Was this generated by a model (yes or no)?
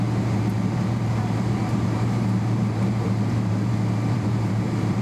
yes